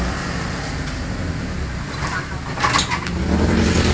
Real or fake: real